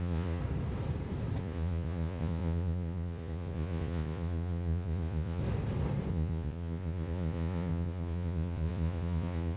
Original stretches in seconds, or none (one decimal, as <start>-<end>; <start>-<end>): 0.4-1.4; 5.4-6.1